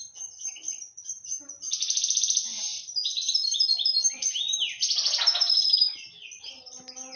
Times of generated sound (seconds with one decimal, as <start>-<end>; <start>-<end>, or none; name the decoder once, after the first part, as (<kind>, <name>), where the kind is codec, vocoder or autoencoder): none